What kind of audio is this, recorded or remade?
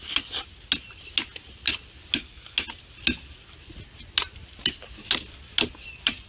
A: recorded